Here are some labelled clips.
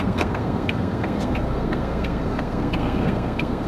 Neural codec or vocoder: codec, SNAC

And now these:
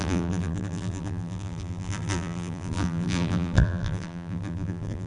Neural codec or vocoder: vocoder, BigVGAN v2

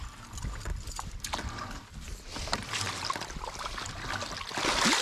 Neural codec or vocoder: none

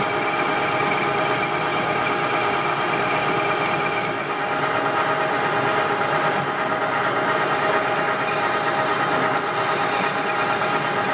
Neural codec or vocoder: none